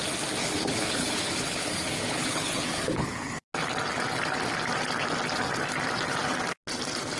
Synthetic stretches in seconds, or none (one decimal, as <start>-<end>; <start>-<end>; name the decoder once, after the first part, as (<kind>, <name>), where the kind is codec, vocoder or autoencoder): 0.4-3.3 (codec, HILCodec)